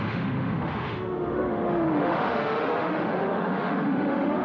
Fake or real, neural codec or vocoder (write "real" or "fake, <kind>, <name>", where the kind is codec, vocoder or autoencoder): fake, autoencoder, DAC-VAE